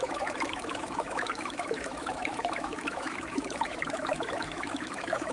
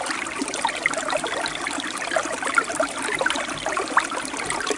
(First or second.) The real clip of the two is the second